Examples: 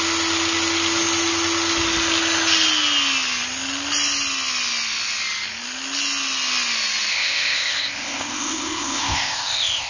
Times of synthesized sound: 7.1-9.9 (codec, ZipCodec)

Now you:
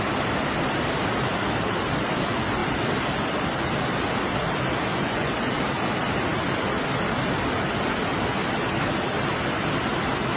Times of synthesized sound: 4.9-5.5 (vocoder, Vocos)

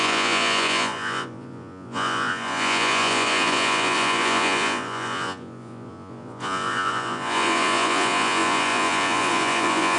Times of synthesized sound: 0.0-10.0 (vocoder, Vocos)

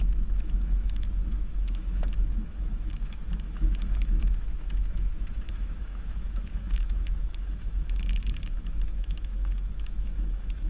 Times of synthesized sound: 0.0-10.7 (autoencoder, DAC-VAE)

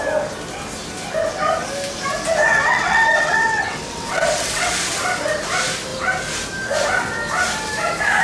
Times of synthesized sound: 2.4-4.7 (vocoder, WaveNeXt)

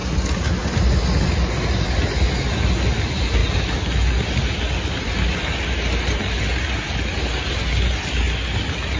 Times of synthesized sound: none